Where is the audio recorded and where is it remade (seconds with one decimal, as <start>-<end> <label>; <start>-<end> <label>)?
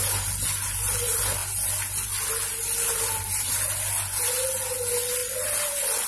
0.0-6.1 recorded